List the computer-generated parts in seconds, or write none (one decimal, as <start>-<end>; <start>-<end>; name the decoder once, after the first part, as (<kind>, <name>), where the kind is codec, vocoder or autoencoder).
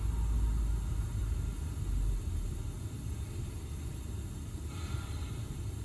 none